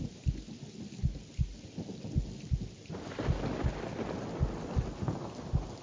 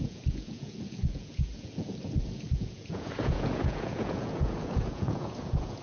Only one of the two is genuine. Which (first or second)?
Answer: first